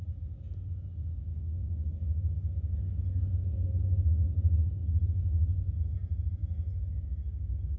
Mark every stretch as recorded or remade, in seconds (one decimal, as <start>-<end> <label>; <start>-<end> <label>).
0.0-1.3 recorded; 1.3-2.8 remade; 2.8-6.4 recorded; 6.4-7.8 remade